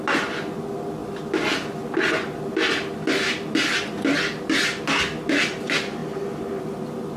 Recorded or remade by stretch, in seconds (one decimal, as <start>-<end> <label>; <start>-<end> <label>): 0.0-7.2 recorded